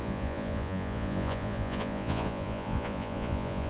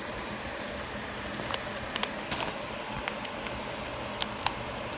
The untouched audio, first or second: second